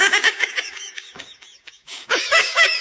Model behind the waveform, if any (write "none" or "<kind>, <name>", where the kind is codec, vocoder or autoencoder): codec, DAC